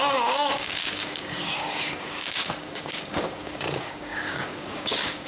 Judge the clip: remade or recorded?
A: remade